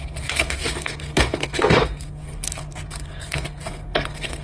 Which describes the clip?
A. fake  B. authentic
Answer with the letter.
A